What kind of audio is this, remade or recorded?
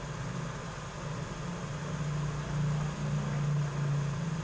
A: recorded